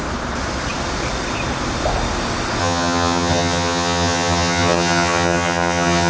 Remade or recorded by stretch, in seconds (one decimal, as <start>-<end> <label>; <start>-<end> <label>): 0.0-2.6 recorded; 2.6-6.1 remade